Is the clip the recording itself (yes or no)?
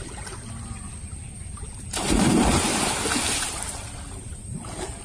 no